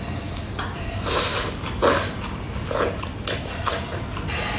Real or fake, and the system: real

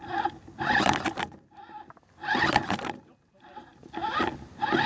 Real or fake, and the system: real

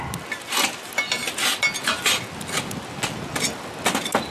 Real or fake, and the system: real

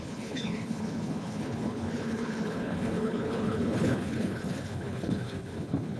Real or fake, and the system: fake, codec, HILCodec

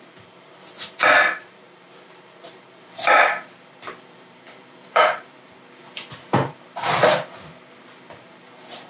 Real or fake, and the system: fake, vocoder, BigVGAN v2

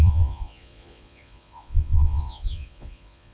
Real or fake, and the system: fake, vocoder, Vocos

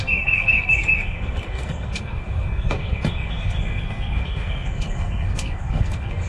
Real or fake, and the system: fake, codec, SNAC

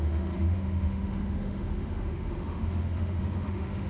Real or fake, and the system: fake, autoencoder, DAC-VAE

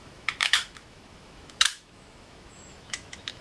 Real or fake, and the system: fake, autoencoder, DAC-VAE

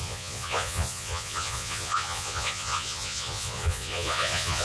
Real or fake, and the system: fake, vocoder, Vocos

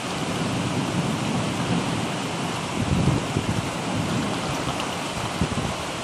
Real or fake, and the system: real